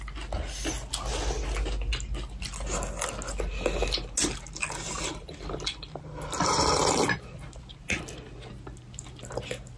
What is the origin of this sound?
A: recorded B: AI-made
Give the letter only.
A